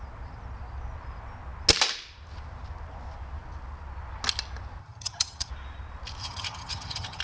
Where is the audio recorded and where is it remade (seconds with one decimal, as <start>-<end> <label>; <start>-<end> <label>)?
0.0-4.8 recorded; 4.8-5.5 remade; 5.5-6.2 recorded; 6.2-7.2 remade